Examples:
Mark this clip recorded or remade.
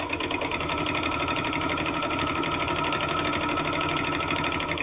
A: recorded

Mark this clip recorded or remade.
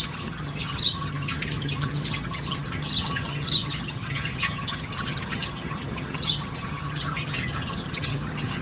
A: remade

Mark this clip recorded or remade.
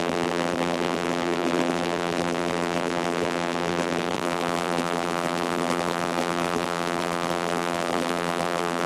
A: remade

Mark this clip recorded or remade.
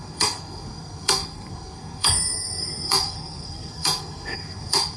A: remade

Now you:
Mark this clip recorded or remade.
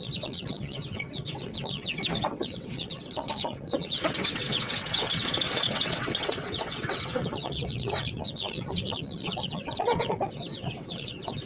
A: remade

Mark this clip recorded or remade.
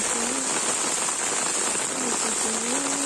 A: recorded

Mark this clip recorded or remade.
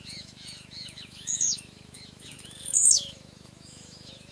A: remade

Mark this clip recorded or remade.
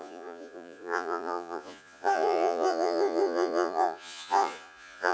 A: remade